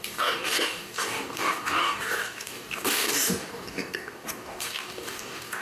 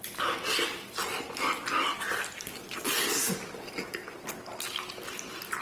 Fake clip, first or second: first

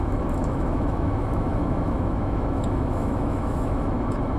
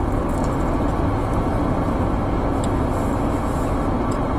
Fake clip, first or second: first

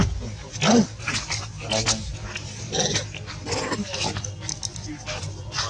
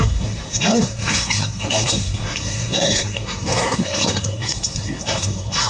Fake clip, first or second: second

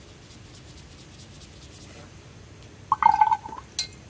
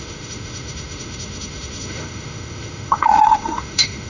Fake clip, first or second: second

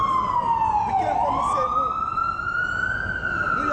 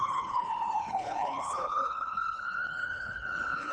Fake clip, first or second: second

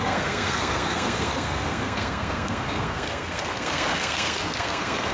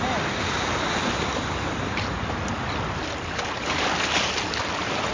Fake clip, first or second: first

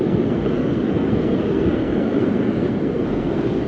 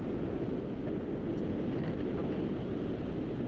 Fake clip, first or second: first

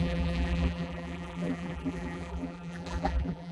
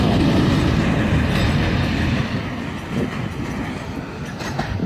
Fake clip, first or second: first